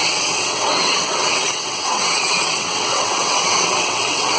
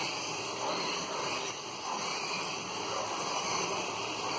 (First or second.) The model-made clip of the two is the first